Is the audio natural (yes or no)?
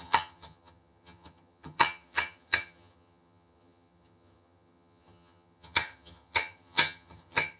no